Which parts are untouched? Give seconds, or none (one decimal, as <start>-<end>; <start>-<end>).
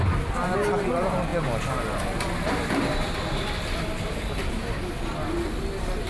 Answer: 0.0-6.1